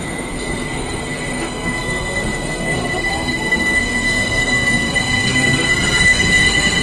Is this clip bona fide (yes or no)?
no